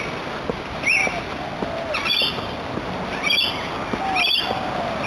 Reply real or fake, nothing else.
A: real